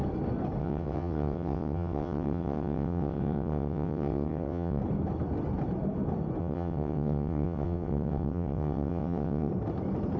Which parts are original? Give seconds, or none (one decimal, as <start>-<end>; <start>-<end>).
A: 0.0-0.6; 4.8-6.4; 9.5-10.2